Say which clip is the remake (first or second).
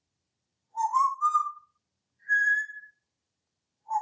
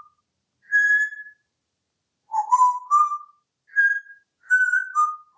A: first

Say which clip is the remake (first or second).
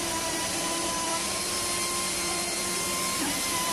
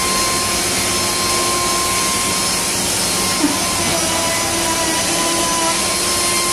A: first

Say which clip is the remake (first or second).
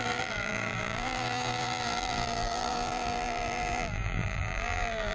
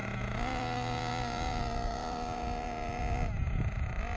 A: first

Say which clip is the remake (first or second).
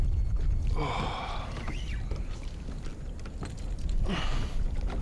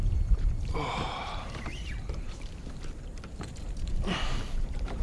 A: second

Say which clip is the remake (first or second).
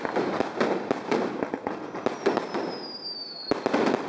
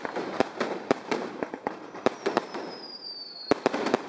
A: second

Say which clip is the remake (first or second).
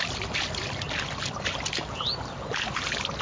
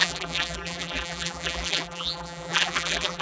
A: second